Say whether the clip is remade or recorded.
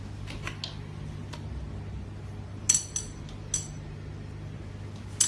recorded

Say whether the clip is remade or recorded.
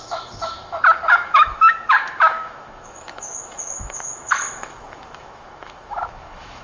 remade